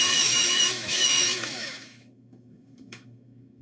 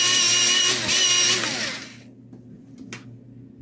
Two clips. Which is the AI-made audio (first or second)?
first